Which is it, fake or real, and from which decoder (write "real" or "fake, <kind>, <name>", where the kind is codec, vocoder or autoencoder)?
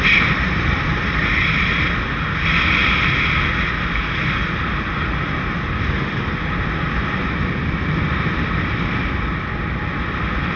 real